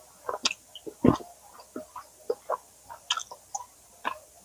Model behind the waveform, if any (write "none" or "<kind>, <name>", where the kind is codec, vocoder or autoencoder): none